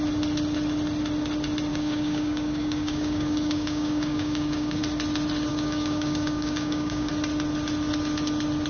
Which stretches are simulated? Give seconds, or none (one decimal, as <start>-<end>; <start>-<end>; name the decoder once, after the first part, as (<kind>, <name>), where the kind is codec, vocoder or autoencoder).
1.7-4.8 (codec, DAC); 5.5-7.1